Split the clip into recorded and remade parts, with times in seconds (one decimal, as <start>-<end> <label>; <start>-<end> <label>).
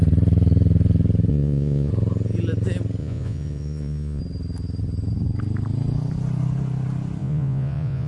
0.0-1.3 recorded; 1.3-1.9 remade; 1.9-3.0 recorded; 3.0-4.2 remade; 4.2-7.2 recorded; 7.2-8.1 remade